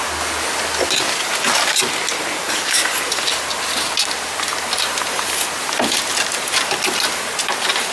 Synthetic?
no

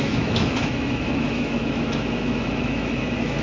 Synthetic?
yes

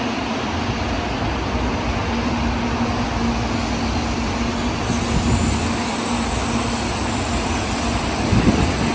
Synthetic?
no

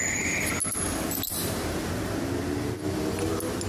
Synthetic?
no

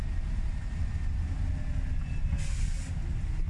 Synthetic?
no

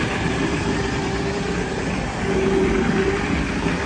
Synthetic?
no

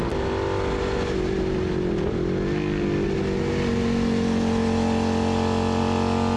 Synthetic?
no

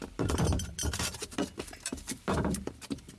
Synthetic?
yes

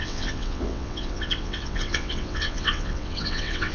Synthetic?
yes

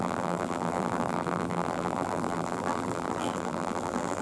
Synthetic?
yes